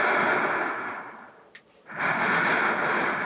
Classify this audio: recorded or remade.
recorded